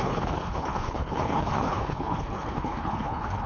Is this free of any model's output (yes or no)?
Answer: no